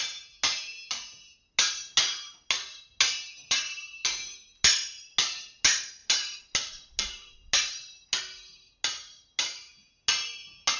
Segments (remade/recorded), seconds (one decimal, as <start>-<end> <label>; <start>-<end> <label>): 0.0-10.8 recorded

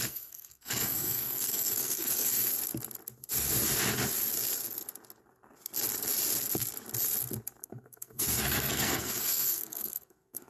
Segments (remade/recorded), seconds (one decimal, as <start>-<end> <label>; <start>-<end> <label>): 0.0-2.5 remade; 2.5-7.6 recorded; 7.6-10.5 remade

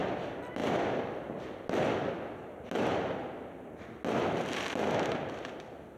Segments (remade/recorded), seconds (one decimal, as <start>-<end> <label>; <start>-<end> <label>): 0.0-6.0 recorded

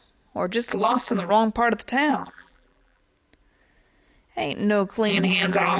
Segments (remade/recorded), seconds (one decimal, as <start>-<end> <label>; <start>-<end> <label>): 0.0-0.7 recorded; 0.7-1.3 remade; 1.3-2.1 recorded; 2.1-3.0 remade; 3.0-5.1 recorded; 5.1-5.8 remade

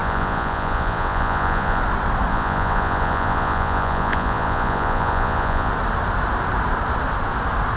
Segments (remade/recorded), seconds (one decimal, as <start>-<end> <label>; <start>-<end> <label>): 0.0-1.8 remade; 1.8-2.3 recorded; 2.3-5.7 remade; 5.7-7.8 recorded

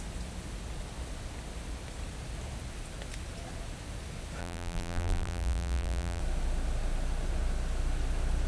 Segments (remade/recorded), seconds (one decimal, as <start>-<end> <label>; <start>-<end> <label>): 0.0-4.4 recorded; 4.4-6.2 remade; 6.2-8.5 recorded